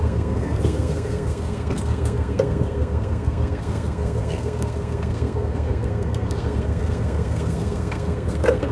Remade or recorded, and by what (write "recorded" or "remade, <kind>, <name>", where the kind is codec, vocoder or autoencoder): remade, codec, SNAC